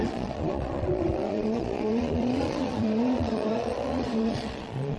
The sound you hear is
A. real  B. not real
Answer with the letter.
B